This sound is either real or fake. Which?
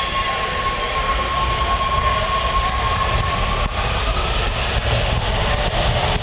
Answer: real